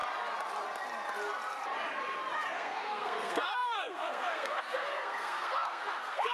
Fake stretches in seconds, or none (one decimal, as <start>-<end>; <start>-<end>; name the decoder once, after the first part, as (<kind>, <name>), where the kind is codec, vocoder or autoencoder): 2.5-6.3 (codec, SNAC)